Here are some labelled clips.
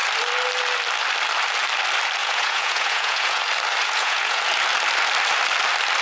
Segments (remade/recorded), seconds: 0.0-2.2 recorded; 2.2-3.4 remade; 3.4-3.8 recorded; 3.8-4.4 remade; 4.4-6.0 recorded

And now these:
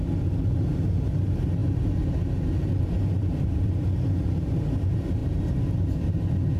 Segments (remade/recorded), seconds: 0.0-6.6 recorded

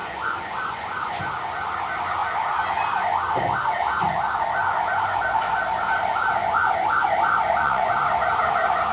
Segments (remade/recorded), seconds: 0.0-1.2 remade; 1.2-6.4 recorded; 6.4-7.9 remade; 7.9-8.9 recorded

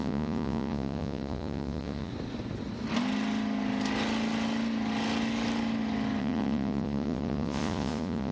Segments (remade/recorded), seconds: 0.0-2.1 remade; 2.1-6.2 recorded; 6.2-8.3 remade